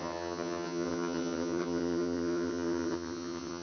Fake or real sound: fake